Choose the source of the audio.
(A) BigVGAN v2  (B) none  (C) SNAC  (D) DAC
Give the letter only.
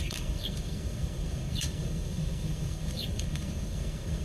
C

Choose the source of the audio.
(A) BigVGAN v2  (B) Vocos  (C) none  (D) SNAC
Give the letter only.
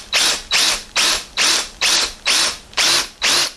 A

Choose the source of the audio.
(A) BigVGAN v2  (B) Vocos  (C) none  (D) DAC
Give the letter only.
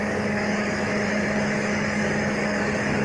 D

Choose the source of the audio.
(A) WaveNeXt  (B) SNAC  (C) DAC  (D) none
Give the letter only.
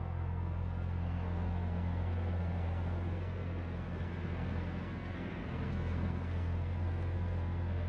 B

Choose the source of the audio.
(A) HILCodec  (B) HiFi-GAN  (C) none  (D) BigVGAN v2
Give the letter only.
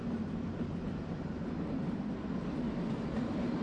C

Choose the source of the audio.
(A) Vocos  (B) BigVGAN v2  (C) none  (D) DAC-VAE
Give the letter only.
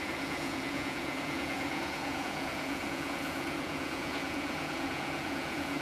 A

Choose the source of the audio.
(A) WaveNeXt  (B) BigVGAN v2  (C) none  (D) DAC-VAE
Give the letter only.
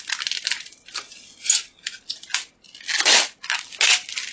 C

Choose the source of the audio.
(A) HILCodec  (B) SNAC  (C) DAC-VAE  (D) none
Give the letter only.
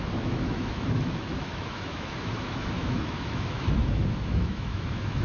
C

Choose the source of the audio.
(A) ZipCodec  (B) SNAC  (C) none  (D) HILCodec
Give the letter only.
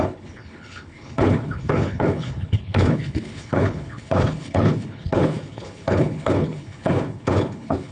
D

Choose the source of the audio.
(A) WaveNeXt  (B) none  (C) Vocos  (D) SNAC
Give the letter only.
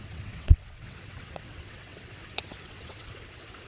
A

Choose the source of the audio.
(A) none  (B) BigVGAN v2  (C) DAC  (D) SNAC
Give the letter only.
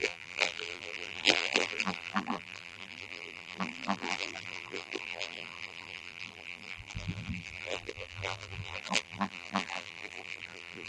B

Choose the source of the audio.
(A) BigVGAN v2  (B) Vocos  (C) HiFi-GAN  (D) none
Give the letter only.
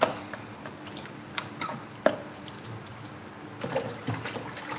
D